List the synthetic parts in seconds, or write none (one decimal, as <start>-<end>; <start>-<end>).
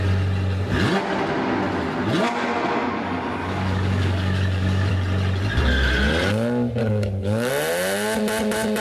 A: 2.8-4.9; 6.8-7.5